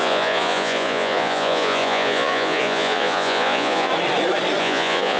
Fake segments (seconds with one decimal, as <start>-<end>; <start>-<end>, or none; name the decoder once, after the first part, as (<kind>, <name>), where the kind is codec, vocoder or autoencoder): 0.0-3.9 (vocoder, Vocos); 4.6-5.2